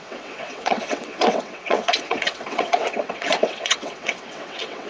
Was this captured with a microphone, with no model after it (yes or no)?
no